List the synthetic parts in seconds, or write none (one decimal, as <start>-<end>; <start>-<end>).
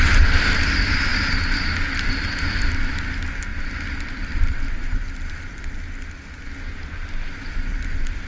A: none